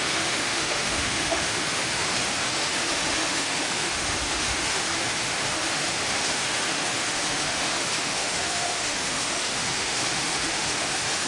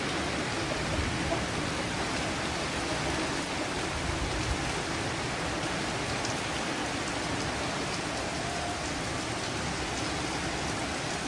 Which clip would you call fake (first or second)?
first